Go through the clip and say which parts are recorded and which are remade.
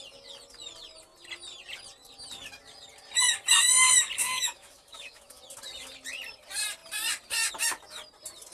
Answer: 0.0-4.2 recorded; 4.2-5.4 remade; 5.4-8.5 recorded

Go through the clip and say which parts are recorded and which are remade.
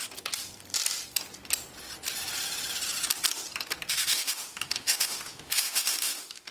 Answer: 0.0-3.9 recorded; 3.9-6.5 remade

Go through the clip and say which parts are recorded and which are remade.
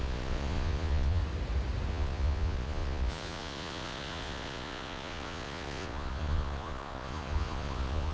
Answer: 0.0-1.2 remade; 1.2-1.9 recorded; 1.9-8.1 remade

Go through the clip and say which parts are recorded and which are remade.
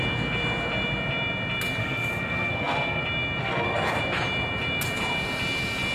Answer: 0.0-1.8 recorded; 1.8-3.0 remade; 3.0-3.4 recorded; 3.4-4.0 remade; 4.0-5.9 recorded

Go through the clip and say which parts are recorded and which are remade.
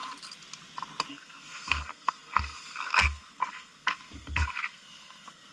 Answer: 0.0-1.1 recorded; 1.1-5.5 remade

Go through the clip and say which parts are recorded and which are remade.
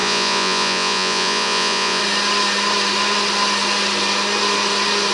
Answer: 0.0-2.0 remade; 2.0-5.1 recorded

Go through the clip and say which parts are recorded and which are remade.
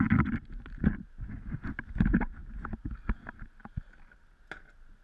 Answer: 0.0-5.0 recorded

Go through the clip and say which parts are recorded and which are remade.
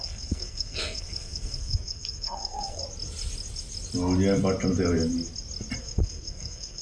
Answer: 0.0-2.8 remade; 2.8-5.8 recorded; 5.8-6.8 remade